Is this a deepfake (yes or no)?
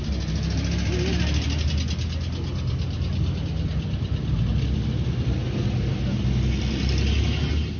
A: no